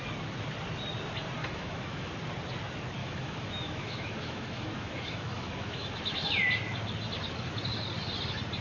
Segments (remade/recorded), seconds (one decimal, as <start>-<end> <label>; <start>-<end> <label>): 0.0-1.4 recorded; 1.4-2.1 remade; 2.1-3.0 recorded; 3.0-6.3 remade; 6.3-8.6 recorded